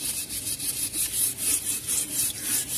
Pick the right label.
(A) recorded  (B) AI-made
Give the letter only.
A